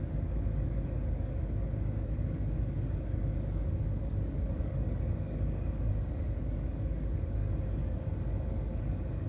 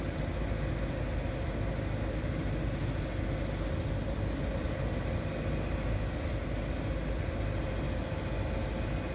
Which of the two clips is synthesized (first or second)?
first